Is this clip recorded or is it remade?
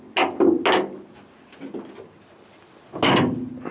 recorded